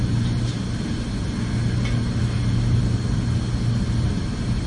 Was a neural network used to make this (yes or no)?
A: no